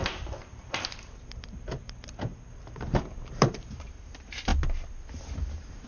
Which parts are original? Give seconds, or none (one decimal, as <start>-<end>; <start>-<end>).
2.3-3.3; 4.5-5.3